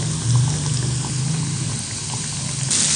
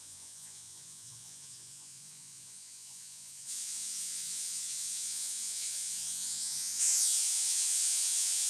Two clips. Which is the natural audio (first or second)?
first